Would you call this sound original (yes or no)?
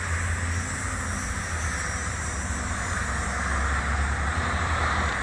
yes